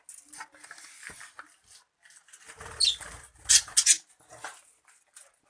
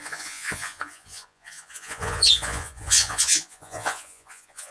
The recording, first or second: first